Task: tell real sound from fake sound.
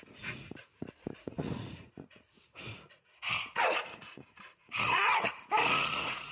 fake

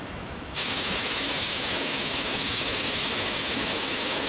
fake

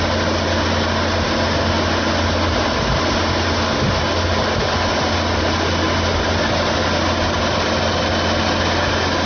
real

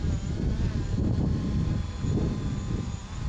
real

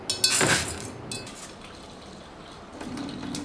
real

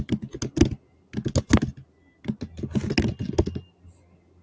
real